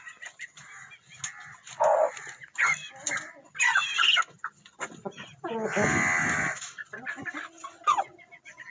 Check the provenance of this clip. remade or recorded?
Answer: recorded